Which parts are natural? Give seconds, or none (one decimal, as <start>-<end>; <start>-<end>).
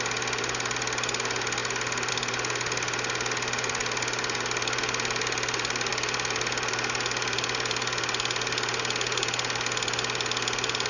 0.0-10.9